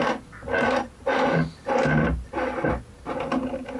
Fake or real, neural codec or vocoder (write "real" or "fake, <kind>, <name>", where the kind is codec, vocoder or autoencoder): real